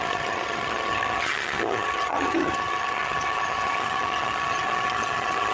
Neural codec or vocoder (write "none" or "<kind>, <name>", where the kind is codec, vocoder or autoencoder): vocoder, HiFi-GAN